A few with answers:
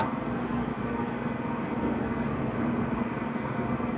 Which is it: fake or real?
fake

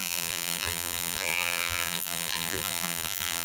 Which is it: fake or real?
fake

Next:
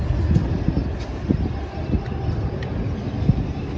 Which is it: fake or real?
real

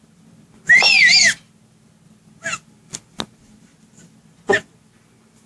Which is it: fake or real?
real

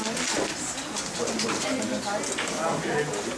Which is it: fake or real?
real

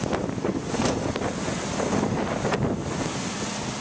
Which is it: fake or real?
real